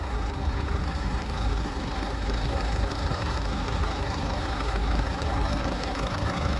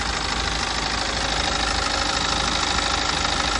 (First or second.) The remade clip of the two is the first